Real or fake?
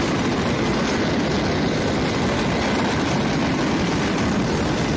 real